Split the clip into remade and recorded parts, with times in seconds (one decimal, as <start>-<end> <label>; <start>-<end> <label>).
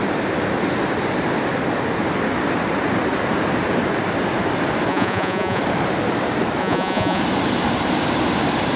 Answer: 0.0-4.9 recorded; 4.9-5.6 remade; 5.6-6.6 recorded; 6.6-7.2 remade; 7.2-8.8 recorded